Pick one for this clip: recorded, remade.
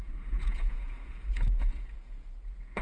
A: remade